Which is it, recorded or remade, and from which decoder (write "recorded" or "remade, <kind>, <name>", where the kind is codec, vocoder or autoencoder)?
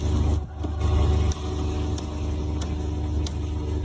recorded